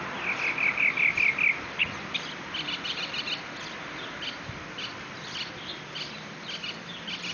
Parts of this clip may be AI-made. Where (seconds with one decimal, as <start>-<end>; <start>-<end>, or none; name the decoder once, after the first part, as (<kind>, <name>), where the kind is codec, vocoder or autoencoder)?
none